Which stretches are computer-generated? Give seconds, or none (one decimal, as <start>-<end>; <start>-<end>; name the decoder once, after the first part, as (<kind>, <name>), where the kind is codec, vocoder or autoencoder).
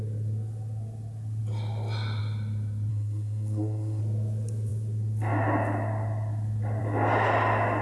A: 2.9-4.0 (codec, SNAC)